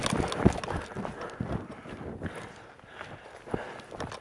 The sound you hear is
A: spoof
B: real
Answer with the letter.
B